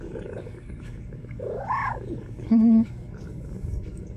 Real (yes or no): no